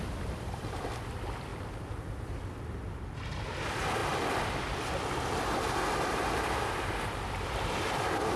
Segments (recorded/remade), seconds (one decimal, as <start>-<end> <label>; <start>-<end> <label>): 0.0-8.4 recorded

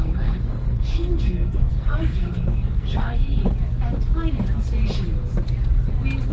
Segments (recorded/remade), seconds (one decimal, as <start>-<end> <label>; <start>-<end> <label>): 0.0-3.4 remade; 3.4-6.3 recorded

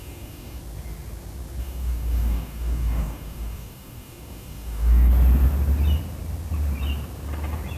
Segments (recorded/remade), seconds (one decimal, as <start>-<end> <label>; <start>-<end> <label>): 0.0-0.6 remade; 0.6-1.6 recorded; 1.6-5.1 remade; 5.1-7.8 recorded

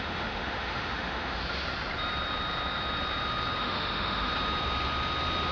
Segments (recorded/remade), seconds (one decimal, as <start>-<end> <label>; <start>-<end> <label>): 0.0-1.4 remade; 1.4-3.6 recorded; 3.6-4.3 remade; 4.3-5.5 recorded

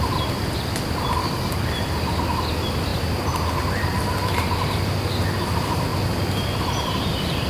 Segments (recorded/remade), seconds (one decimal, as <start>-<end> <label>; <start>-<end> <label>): 0.0-1.2 recorded; 1.2-1.7 remade; 1.7-7.5 recorded

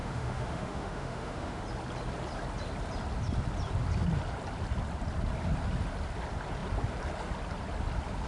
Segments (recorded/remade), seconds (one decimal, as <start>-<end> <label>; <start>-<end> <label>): 0.0-1.6 remade; 1.6-8.3 recorded

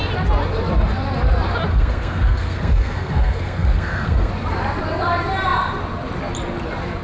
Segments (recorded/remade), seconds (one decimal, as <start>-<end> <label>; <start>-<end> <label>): 0.0-1.7 recorded; 1.7-4.3 remade; 4.3-7.0 recorded